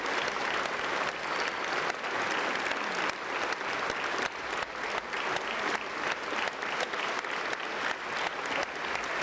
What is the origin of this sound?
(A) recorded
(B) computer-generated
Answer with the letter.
A